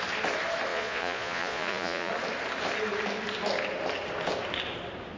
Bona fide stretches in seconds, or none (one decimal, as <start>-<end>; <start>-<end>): 0.0-0.7; 2.1-5.2